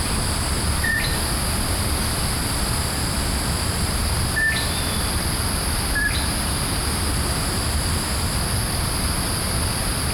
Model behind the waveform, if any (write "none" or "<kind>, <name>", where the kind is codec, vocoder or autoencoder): none